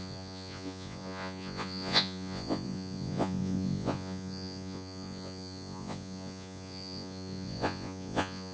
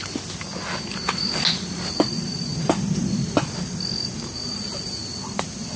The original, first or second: second